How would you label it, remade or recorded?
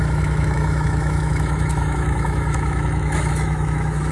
remade